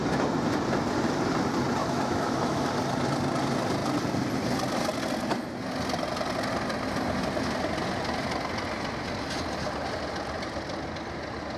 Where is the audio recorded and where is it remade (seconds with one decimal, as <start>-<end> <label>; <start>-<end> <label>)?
0.0-1.8 recorded; 1.8-2.7 remade; 2.7-11.6 recorded